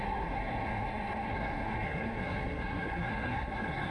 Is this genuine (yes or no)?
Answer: no